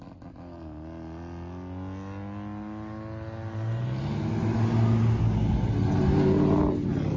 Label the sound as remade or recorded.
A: recorded